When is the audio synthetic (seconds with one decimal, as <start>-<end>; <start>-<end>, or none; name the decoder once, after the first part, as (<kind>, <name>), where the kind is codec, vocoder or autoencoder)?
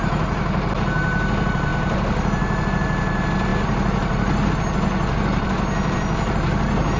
none